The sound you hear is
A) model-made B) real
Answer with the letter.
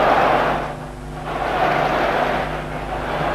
B